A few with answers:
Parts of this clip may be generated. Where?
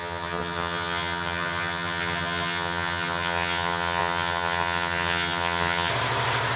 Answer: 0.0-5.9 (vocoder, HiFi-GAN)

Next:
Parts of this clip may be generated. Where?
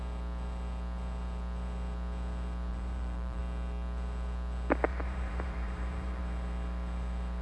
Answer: 2.7-3.4 (vocoder, BigVGAN v2); 4.9-6.2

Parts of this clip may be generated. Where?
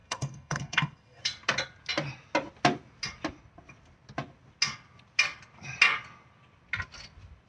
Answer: 0.0-1.2 (codec, SNAC)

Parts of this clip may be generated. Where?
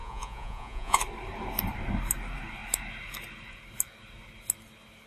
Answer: 0.0-1.0 (vocoder, Vocos)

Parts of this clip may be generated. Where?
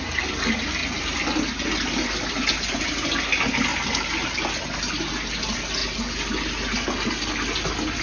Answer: none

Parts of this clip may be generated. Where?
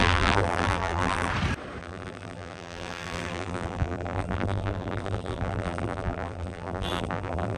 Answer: 0.0-1.3 (vocoder, BigVGAN v2); 1.8-7.6